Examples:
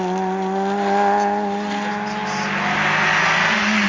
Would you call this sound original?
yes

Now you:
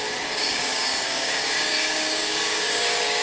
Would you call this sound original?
no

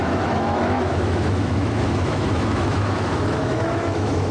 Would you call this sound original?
no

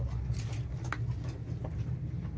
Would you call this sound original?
yes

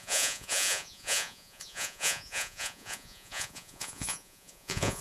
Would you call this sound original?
no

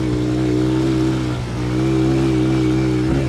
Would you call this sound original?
yes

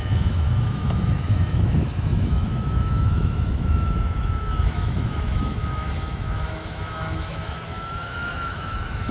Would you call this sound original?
no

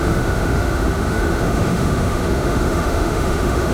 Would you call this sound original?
no